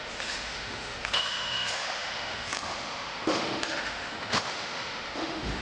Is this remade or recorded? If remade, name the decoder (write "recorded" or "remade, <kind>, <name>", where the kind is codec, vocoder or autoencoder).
remade, autoencoder, DAC-VAE